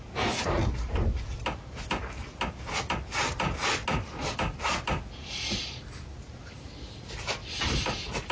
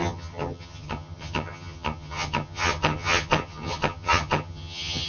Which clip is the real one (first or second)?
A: first